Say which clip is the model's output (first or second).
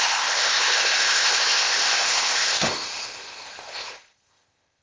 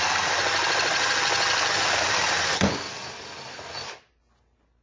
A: first